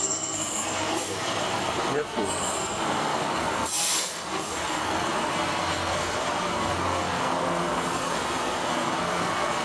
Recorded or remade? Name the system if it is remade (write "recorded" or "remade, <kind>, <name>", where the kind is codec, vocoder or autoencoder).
remade, codec, SNAC